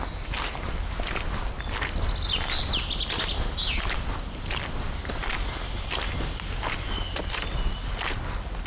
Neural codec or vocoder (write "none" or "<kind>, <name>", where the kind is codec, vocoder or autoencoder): none